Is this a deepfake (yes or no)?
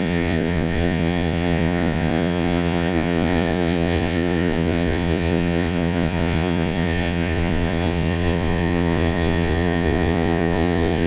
yes